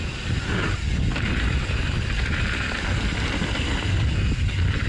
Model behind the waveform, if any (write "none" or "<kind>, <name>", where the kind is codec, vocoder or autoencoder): none